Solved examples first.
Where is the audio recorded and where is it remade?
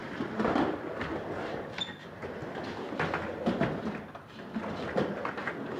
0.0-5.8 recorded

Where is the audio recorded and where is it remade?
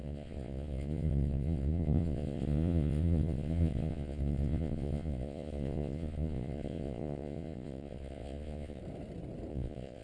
0.0-8.8 remade; 8.8-9.5 recorded; 9.5-10.0 remade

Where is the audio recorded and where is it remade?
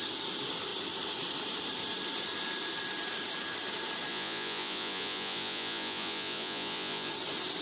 0.0-4.1 recorded; 4.1-7.1 remade; 7.1-7.6 recorded